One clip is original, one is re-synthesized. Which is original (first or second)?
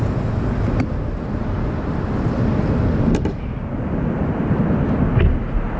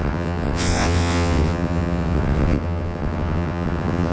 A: first